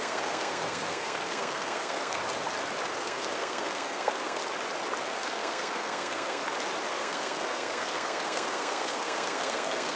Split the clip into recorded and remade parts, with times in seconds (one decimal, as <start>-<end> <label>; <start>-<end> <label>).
0.0-2.2 remade; 2.2-3.0 recorded; 3.0-4.4 remade; 4.4-5.0 recorded; 5.0-6.4 remade; 6.4-6.9 recorded; 6.9-10.0 remade

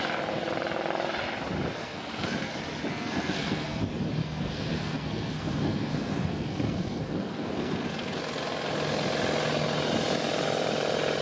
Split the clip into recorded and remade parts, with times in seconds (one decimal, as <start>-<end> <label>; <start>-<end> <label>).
0.0-1.8 recorded; 1.8-2.5 remade; 2.5-2.9 recorded; 2.9-3.8 remade; 3.8-4.2 recorded; 4.2-8.2 remade; 8.2-11.2 recorded

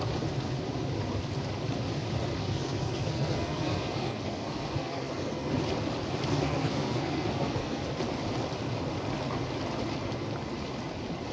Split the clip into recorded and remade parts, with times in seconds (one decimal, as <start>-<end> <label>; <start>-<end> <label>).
0.0-2.4 recorded; 2.4-5.5 remade; 5.5-6.3 recorded; 6.3-7.8 remade; 7.8-11.3 recorded

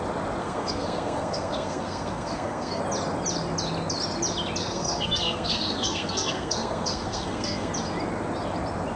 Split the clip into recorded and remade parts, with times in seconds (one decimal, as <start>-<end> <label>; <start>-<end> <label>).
0.0-0.4 recorded; 0.4-2.8 remade; 2.8-4.6 recorded; 4.6-7.7 remade; 7.7-9.0 recorded

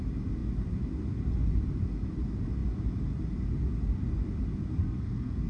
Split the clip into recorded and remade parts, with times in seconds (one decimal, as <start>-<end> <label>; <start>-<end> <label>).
0.0-4.8 recorded; 4.8-5.5 remade

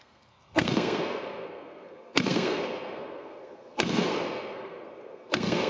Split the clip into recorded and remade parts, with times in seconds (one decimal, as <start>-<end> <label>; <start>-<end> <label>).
0.0-5.7 remade

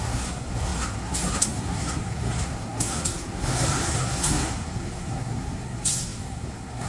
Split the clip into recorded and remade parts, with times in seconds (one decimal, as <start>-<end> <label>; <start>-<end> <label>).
0.0-6.9 remade

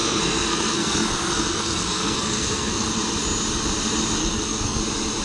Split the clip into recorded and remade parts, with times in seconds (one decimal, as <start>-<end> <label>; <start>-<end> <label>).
0.0-2.9 remade; 2.9-4.2 recorded; 4.2-4.8 remade; 4.8-5.2 recorded